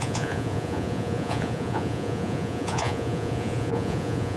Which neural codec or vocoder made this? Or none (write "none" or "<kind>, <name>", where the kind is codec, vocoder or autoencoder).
vocoder, Vocos